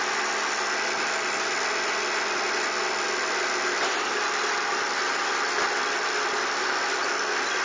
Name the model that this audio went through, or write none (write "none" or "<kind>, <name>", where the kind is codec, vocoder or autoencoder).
none